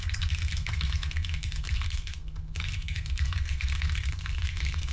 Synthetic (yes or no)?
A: yes